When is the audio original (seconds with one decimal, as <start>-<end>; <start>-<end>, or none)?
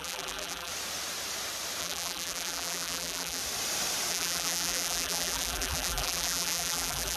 0.7-1.8; 3.4-4.1